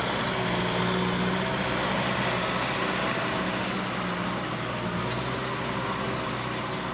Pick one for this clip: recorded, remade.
recorded